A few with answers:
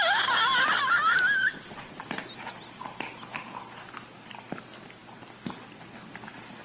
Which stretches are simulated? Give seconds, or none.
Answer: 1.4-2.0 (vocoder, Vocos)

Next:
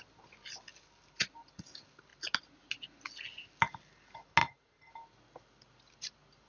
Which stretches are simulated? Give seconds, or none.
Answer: 4.4-4.9 (vocoder, Vocos)

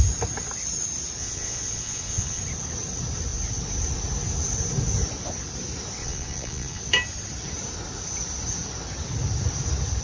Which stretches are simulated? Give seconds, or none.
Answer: 1.2-2.4 (vocoder, Vocos); 6.0-6.8

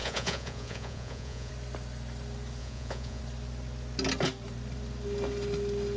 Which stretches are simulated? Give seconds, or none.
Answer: 0.0-1.5 (vocoder, Vocos); 2.6-3.2

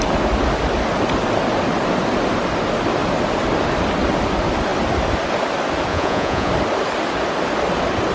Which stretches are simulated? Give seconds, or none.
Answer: 5.9-6.5 (vocoder, Vocos)

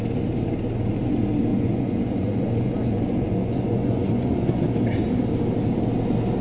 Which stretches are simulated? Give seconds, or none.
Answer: 1.5-4.7 (vocoder, Vocos)

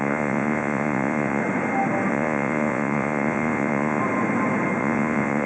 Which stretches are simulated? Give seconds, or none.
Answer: 0.0-1.4 (vocoder, Vocos); 2.1-4.0; 4.8-5.5

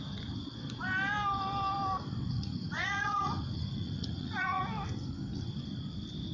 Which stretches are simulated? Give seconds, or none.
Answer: 2.3-4.6 (vocoder, Vocos)